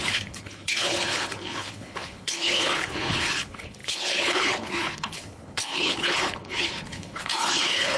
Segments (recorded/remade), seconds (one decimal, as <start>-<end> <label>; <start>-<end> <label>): 0.0-8.0 remade